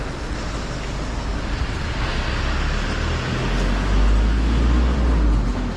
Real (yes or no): yes